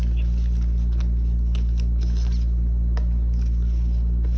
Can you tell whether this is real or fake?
real